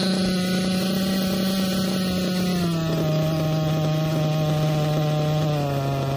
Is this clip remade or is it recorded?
recorded